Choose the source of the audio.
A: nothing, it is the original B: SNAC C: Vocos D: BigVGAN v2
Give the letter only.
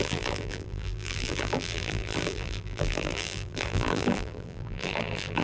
D